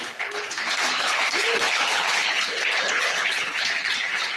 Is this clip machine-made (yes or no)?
yes